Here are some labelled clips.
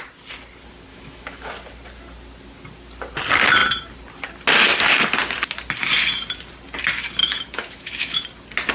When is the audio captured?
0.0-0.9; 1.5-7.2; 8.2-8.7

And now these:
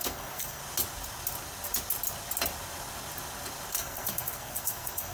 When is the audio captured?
0.6-3.7

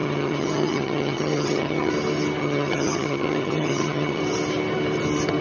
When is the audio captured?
1.9-2.4; 4.2-5.4